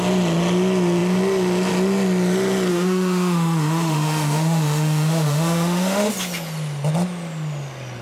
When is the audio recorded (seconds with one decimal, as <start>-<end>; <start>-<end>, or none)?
0.0-2.7; 6.1-8.0